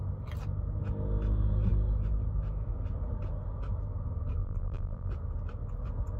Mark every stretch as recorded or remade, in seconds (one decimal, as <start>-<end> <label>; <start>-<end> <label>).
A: 0.0-4.4 recorded; 4.4-5.1 remade; 5.1-6.2 recorded